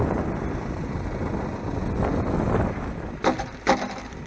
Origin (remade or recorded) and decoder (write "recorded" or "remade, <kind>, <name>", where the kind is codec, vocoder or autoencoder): recorded